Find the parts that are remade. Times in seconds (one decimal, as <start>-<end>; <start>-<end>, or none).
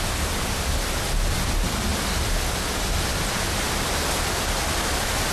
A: 0.0-1.9; 3.0-5.3